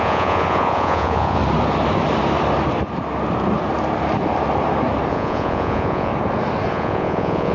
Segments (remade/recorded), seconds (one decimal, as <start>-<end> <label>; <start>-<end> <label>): 0.0-1.4 remade; 1.4-5.1 recorded; 5.1-6.1 remade; 6.1-6.7 recorded; 6.7-7.5 remade